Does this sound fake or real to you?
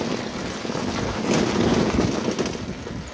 real